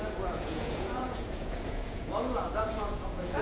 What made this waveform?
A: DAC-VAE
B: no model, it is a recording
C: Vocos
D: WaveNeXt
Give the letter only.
C